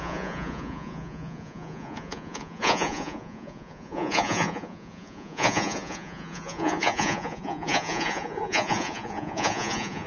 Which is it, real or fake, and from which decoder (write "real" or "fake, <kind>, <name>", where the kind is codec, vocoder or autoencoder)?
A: fake, vocoder, Vocos